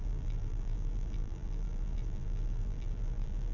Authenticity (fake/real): fake